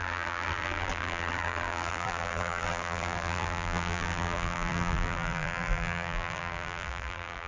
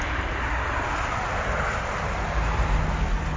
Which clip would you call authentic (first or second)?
second